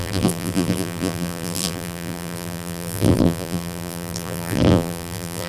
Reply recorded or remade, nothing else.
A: remade